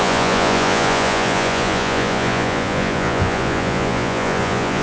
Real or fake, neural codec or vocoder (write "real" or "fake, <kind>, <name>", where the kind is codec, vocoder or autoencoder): fake, vocoder, Vocos